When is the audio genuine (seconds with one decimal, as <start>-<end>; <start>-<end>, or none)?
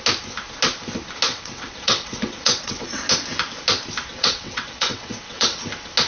0.0-1.3; 3.0-4.1; 5.6-6.1